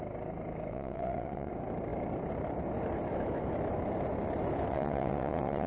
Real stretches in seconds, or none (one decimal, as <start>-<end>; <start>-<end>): 0.0-0.7; 1.5-4.7